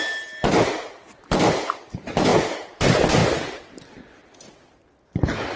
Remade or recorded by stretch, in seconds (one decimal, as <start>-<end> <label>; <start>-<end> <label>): 0.0-2.3 recorded; 2.3-2.8 remade; 2.8-5.6 recorded